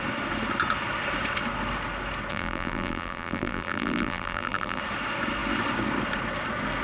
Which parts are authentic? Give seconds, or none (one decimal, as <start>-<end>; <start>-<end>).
0.0-2.3; 4.8-6.8